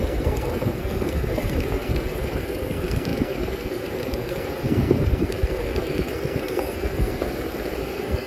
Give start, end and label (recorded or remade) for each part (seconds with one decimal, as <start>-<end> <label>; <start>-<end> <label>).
0.0-8.3 remade